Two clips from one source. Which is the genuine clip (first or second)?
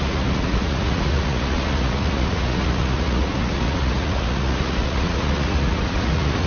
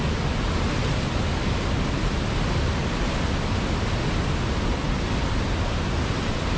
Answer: second